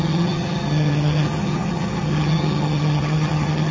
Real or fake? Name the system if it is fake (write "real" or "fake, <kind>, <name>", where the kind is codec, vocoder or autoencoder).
fake, vocoder, HiFi-GAN